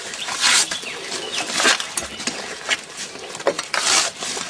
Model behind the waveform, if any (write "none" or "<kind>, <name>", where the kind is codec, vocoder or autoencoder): none